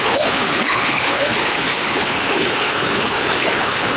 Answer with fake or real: fake